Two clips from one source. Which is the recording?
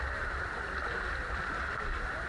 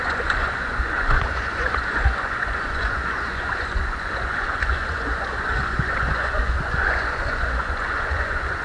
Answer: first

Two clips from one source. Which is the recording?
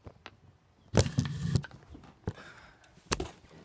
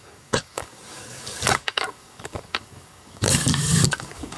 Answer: first